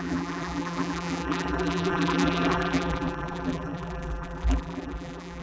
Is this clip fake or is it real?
fake